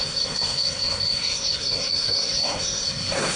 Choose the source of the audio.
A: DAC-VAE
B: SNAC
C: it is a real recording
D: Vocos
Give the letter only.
B